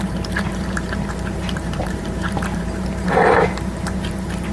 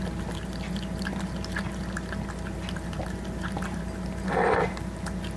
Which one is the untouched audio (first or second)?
second